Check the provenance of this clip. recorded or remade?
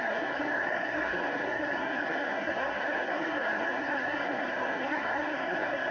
remade